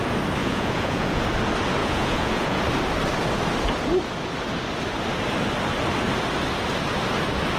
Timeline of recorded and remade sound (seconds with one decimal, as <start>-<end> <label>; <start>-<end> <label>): 0.0-0.4 recorded; 0.4-1.2 remade; 1.2-1.8 recorded; 1.8-2.6 remade; 2.6-7.6 recorded